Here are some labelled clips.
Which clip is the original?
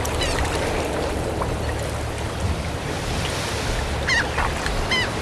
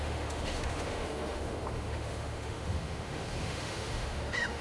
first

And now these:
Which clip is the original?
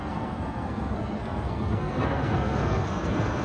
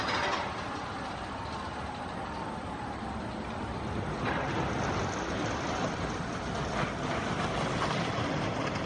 second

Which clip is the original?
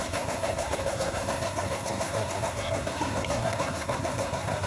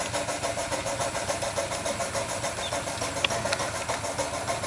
second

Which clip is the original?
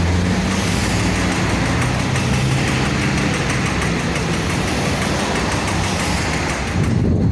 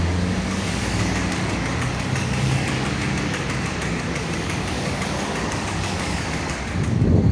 first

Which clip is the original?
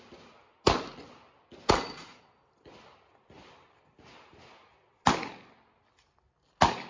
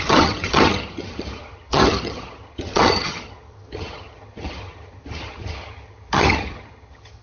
first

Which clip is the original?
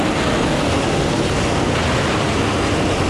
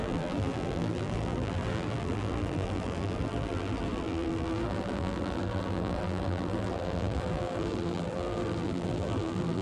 first